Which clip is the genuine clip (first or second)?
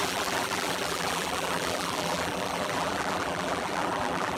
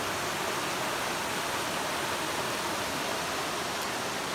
second